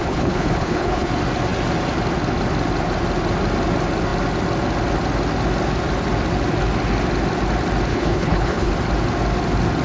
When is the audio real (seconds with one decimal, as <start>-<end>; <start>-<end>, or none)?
1.1-7.9; 8.7-9.8